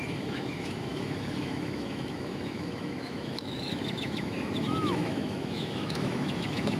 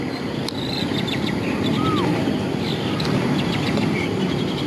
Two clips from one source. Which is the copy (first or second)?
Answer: first